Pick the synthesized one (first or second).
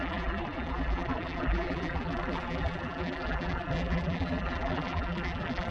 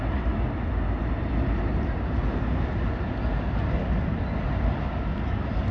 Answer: first